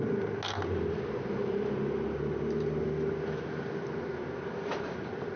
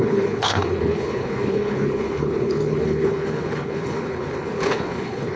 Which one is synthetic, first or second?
second